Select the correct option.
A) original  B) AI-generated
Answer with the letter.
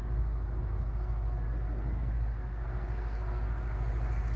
B